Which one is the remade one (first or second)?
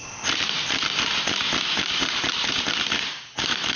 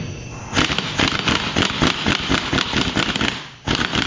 first